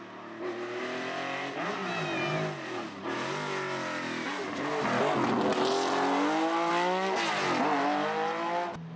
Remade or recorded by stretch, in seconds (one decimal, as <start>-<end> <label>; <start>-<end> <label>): 0.0-9.0 recorded